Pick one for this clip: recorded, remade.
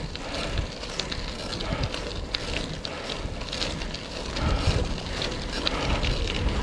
recorded